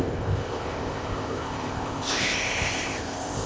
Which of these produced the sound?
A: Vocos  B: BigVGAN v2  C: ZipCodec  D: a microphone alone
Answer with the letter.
C